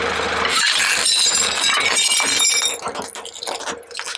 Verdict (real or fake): real